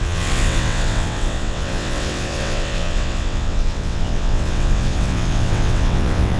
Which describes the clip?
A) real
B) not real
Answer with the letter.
B